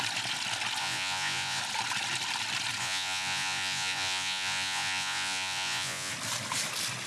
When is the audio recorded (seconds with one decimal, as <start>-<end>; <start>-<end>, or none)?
0.0-0.8; 1.6-2.8; 6.1-7.1